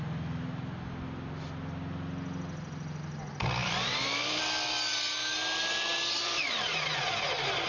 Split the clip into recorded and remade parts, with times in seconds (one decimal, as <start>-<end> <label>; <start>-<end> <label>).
0.0-3.6 recorded; 3.6-4.4 remade; 4.4-5.9 recorded; 5.9-7.2 remade; 7.2-7.7 recorded